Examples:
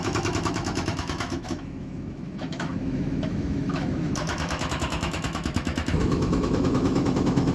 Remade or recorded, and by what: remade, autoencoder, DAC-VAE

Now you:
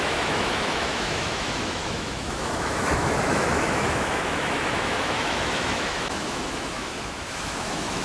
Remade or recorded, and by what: remade, autoencoder, DAC-VAE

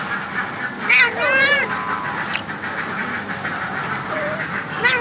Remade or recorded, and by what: recorded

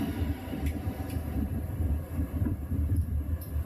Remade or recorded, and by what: remade, vocoder, BigVGAN v2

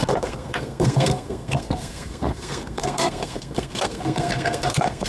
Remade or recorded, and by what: remade, codec, SNAC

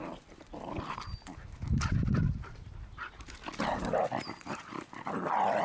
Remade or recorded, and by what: recorded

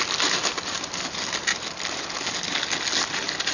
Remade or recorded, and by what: recorded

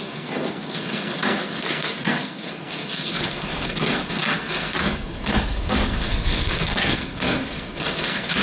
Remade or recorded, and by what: remade, codec, SNAC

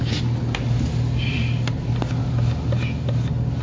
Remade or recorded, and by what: recorded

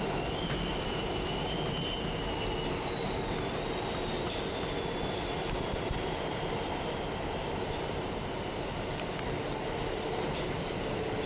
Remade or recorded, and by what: recorded